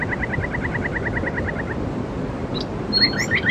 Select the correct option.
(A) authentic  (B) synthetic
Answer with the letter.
A